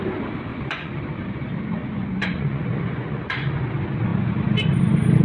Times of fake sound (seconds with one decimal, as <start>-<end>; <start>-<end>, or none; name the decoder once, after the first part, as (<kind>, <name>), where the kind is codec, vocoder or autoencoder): 0.5-1.0 (vocoder, Vocos); 1.8-3.6